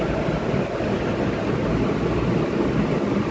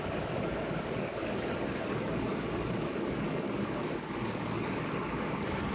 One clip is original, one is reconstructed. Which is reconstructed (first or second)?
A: second